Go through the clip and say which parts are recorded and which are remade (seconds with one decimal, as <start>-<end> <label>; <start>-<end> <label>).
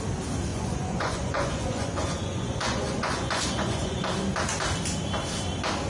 0.0-0.5 recorded; 0.5-4.0 remade; 4.0-5.9 recorded